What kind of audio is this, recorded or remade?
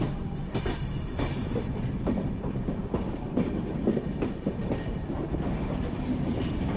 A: remade